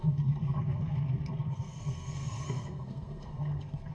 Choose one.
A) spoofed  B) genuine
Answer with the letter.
A